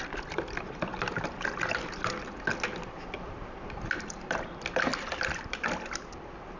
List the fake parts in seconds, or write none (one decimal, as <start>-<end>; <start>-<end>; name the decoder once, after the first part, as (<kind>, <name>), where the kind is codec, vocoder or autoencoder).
0.0-0.9 (vocoder, BigVGAN v2); 3.9-6.6